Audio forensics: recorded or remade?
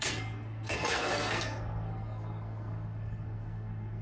remade